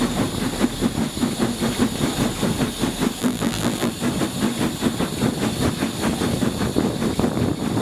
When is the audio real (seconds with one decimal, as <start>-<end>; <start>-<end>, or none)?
0.0-3.2; 3.9-7.8